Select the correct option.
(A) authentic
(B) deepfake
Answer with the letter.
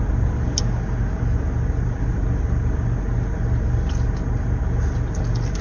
A